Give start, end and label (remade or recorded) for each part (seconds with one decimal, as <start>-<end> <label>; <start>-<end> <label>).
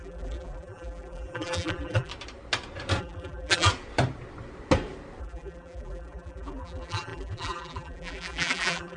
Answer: 0.0-2.1 remade; 2.1-3.0 recorded; 3.0-3.7 remade; 3.7-5.2 recorded; 5.2-9.0 remade